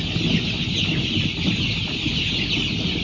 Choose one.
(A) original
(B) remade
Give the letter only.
A